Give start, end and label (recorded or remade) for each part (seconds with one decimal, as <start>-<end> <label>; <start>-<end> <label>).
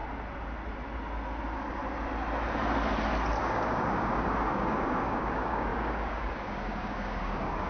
0.0-3.4 recorded; 3.4-7.7 remade